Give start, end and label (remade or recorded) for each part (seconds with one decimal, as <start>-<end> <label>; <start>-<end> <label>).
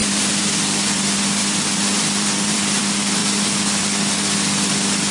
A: 0.0-0.5 remade; 0.5-1.4 recorded; 1.4-2.8 remade; 2.8-5.1 recorded